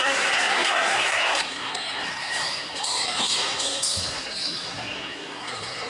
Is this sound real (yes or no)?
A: no